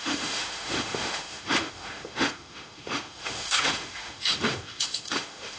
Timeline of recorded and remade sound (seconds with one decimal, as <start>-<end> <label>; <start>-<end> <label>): 0.0-5.6 remade